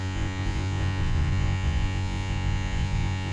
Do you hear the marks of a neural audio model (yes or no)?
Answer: yes